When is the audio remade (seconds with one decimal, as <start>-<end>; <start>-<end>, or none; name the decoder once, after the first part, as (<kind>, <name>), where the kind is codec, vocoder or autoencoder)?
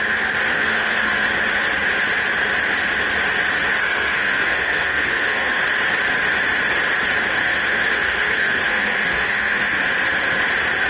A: 0.5-1.1 (codec, SNAC); 3.8-5.6; 7.4-9.8